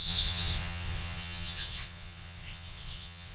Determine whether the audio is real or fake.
fake